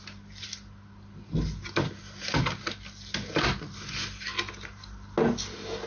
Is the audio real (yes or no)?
yes